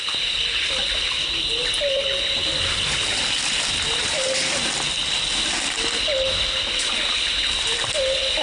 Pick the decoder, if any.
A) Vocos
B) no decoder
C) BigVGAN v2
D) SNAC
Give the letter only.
B